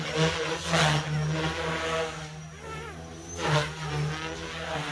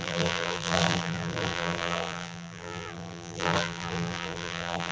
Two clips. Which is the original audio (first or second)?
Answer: first